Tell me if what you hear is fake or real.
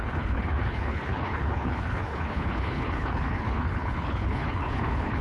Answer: fake